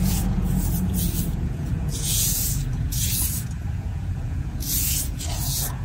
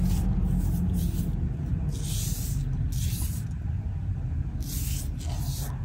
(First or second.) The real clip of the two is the second